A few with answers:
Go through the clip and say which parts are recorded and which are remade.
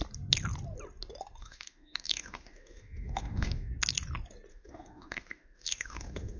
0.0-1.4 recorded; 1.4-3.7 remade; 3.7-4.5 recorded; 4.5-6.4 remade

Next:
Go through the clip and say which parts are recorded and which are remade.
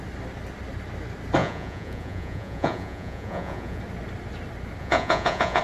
0.0-1.4 recorded; 1.4-3.8 remade; 3.8-4.8 recorded; 4.8-5.6 remade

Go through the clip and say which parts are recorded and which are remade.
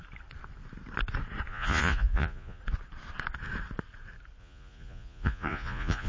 0.0-1.5 recorded; 1.5-2.6 remade; 2.6-4.4 recorded; 4.4-6.1 remade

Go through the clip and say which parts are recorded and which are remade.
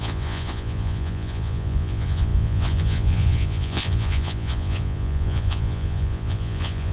0.0-6.9 remade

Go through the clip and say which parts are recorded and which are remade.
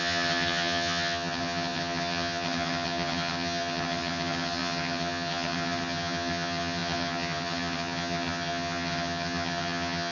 0.0-10.1 remade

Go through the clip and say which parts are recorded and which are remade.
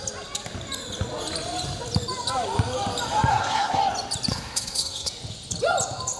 0.0-3.3 recorded; 3.3-3.8 remade; 3.8-4.3 recorded; 4.3-5.1 remade; 5.1-6.2 recorded